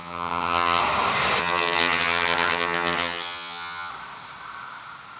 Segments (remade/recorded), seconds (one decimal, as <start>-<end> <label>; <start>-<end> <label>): 0.0-0.8 remade; 0.8-1.4 recorded; 1.4-3.9 remade; 3.9-5.2 recorded